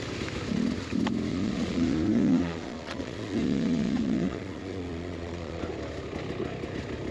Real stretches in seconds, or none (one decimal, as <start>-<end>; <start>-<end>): 0.0-1.3; 5.6-7.1